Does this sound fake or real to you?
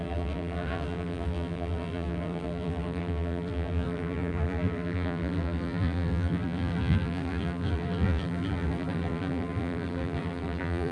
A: fake